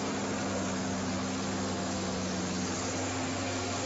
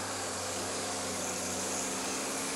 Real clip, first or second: first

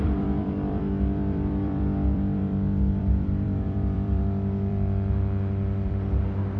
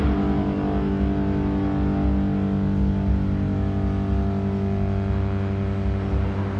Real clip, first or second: second